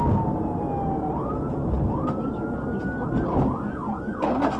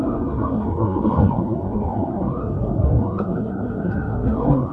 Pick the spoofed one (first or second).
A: second